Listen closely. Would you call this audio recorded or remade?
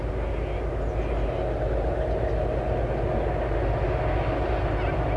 recorded